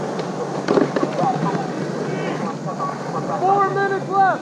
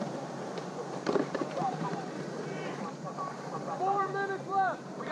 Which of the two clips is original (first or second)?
first